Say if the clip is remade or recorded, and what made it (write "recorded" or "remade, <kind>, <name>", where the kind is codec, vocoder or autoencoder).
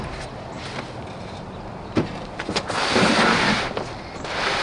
recorded